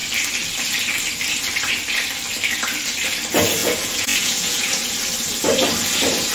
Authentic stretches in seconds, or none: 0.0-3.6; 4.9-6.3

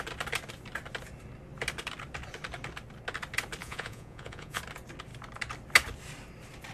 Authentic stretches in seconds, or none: 0.0-3.6; 4.6-6.7